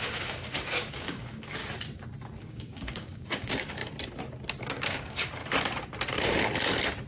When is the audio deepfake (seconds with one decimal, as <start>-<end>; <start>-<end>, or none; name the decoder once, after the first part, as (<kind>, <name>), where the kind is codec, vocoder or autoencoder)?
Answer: 0.0-1.6 (codec, DAC); 2.4-3.8; 4.6-5.4